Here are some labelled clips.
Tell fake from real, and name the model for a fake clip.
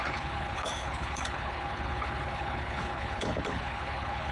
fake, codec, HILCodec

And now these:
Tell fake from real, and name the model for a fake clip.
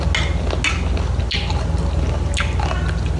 real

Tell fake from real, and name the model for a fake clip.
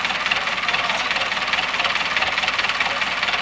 real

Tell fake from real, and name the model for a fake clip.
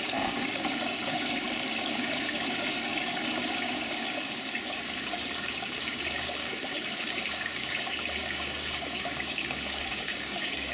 fake, codec, DAC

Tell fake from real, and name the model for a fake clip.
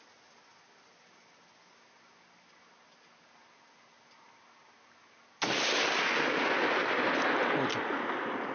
real